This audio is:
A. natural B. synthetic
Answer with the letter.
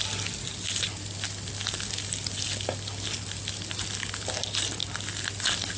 A